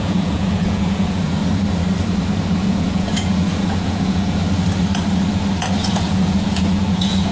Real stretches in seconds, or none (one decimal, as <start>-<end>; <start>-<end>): 1.4-2.5; 4.4-5.8